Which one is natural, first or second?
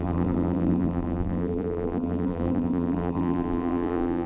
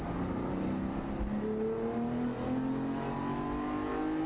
second